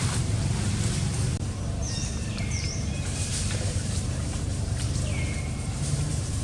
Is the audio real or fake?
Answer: fake